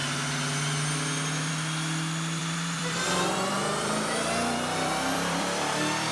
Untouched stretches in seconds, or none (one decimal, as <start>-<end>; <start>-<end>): 0.0-2.4